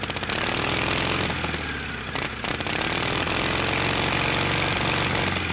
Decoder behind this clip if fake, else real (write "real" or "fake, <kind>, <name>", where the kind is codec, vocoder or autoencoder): real